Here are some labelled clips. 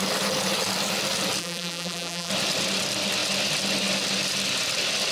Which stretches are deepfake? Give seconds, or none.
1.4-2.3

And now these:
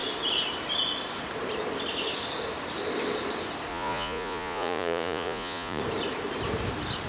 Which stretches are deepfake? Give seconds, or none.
3.7-5.8

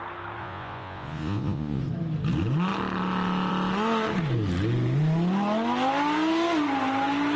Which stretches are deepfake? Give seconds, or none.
0.4-1.8

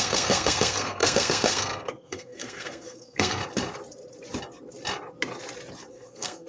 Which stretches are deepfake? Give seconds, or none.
0.0-3.4; 5.9-6.5

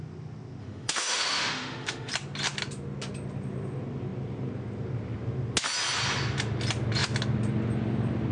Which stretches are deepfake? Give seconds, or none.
0.6-2.1

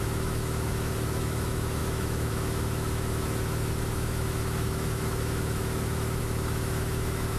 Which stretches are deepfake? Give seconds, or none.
0.0-7.4